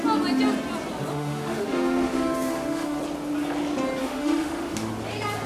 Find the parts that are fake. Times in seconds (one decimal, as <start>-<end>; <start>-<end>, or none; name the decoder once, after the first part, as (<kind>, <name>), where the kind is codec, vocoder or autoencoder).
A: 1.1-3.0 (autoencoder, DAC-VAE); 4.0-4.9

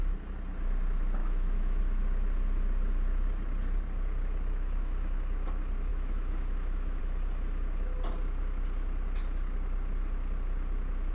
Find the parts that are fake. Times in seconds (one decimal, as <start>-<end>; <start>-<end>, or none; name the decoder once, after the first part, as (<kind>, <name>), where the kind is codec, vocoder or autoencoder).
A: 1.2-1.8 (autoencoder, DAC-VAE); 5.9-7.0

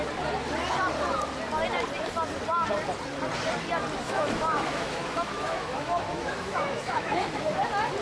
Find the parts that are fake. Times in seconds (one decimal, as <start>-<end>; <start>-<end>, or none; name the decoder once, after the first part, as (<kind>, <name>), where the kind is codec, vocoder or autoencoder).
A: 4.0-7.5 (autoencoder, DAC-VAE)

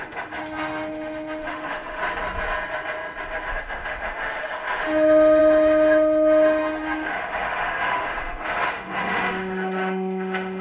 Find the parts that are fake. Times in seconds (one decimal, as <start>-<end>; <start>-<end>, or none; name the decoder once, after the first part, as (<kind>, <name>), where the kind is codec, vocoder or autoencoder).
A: 0.0-2.0 (autoencoder, DAC-VAE); 3.5-10.6

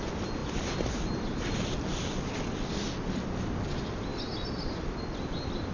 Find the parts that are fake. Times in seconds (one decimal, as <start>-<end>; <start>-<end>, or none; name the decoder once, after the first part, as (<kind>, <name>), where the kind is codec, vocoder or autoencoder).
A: none